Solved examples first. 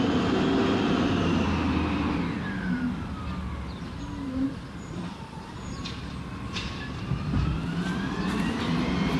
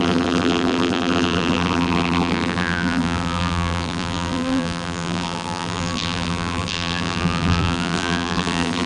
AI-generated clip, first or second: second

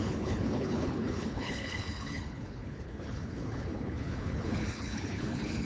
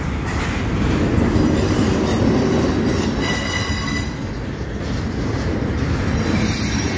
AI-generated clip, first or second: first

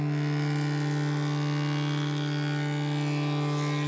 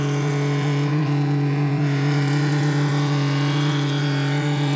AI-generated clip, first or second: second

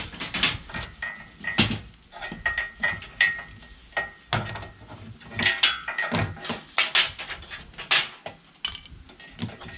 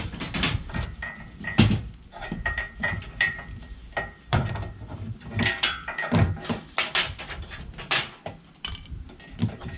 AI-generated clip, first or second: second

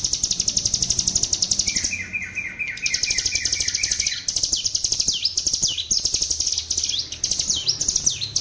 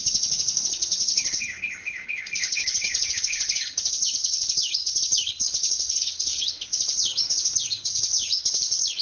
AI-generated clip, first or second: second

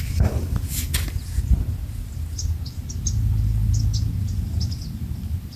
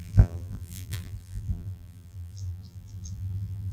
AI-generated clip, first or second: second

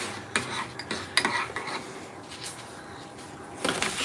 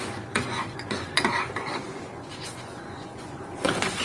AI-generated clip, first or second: second